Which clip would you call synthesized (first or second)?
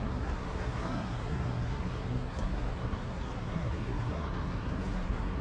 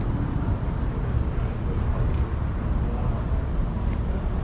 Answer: first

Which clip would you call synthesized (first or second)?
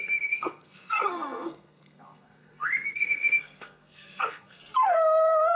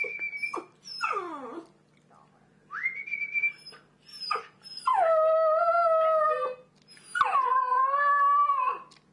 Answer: first